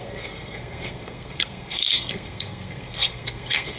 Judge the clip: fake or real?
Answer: fake